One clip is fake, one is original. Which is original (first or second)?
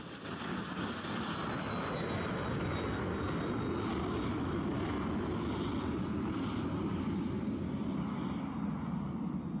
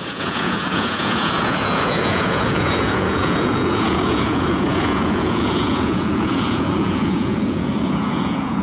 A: first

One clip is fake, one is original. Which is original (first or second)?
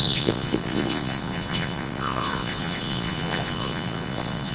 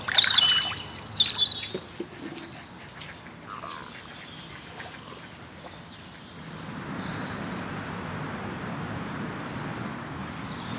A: second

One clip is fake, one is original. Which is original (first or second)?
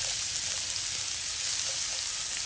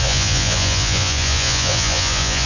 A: first